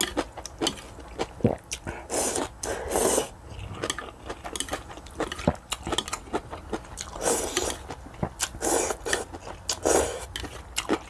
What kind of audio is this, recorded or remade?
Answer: recorded